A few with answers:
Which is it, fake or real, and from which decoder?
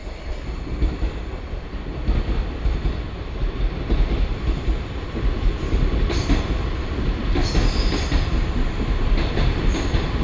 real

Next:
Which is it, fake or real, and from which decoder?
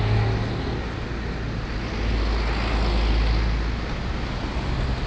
real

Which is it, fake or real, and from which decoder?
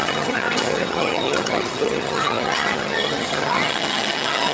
fake, vocoder, HiFi-GAN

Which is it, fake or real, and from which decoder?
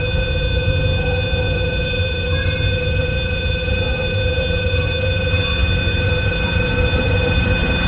fake, vocoder, HiFi-GAN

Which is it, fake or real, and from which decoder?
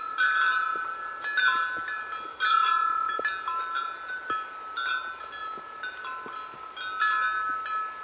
real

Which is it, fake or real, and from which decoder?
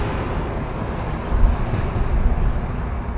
real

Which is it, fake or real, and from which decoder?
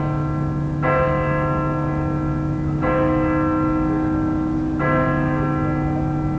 real